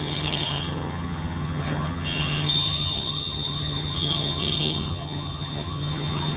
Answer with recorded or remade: remade